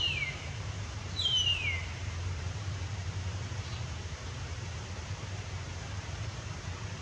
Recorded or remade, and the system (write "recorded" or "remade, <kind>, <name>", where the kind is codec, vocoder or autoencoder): remade, vocoder, BigVGAN v2